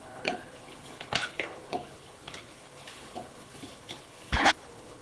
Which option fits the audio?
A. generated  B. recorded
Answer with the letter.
A